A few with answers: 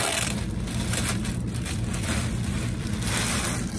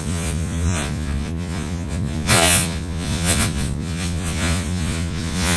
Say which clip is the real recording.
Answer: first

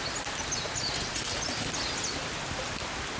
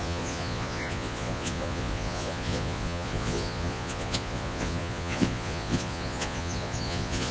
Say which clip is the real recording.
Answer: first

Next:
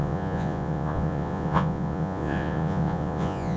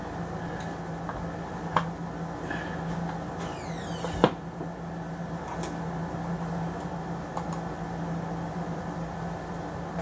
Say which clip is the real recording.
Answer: second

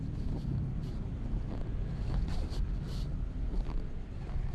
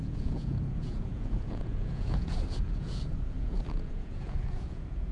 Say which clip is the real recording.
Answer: first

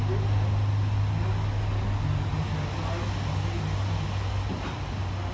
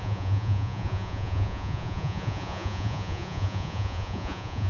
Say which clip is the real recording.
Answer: first